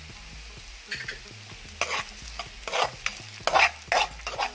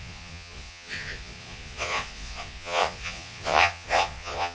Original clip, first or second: first